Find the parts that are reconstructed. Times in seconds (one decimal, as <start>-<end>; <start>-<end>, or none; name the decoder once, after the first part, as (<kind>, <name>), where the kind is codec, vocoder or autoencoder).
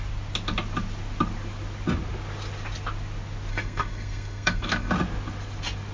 3.5-4.9 (codec, SNAC)